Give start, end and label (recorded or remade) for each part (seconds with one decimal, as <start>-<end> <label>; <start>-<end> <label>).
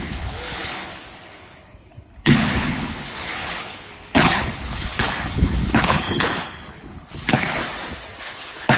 0.0-7.6 remade; 7.6-8.2 recorded; 8.2-8.8 remade